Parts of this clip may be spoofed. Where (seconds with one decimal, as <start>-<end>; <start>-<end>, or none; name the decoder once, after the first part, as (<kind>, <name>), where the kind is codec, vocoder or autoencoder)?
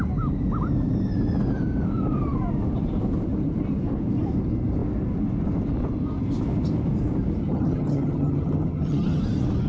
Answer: 7.4-9.2 (vocoder, HiFi-GAN)